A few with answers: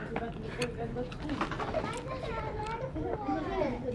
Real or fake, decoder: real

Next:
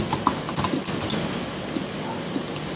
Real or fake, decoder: real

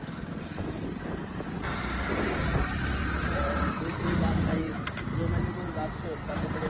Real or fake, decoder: real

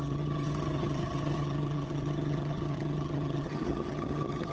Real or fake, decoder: fake, vocoder, HiFi-GAN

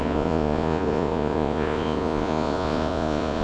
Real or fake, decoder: fake, vocoder, Vocos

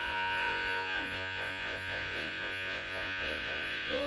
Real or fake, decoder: fake, vocoder, Vocos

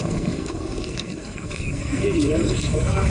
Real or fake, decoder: fake, codec, SNAC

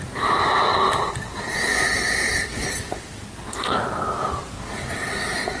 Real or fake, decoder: real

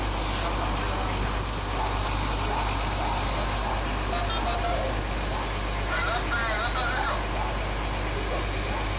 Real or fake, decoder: real